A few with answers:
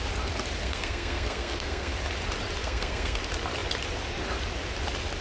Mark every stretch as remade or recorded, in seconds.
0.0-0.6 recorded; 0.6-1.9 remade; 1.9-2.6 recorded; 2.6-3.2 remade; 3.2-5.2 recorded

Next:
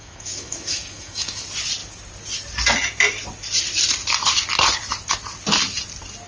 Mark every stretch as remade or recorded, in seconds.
0.0-1.4 remade; 1.4-6.3 recorded

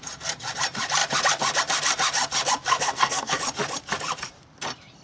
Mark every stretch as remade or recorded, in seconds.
0.0-2.7 recorded; 2.7-3.4 remade; 3.4-5.0 recorded

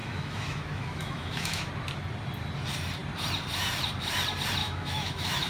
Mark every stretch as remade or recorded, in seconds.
0.0-1.7 remade; 1.7-4.6 recorded; 4.6-5.5 remade